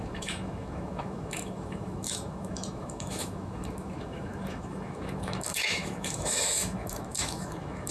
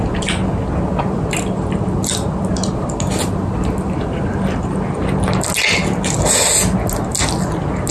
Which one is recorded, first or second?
second